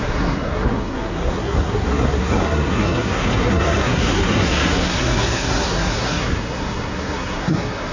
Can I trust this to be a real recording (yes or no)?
no